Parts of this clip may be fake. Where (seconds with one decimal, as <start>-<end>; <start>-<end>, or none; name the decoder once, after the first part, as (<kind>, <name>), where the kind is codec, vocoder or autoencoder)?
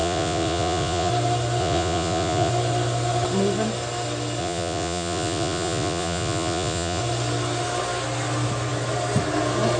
0.0-1.1 (vocoder, Vocos); 1.6-2.5; 4.4-7.0